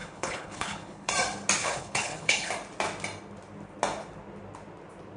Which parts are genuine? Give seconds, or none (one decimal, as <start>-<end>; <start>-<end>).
1.1-1.6; 2.5-5.2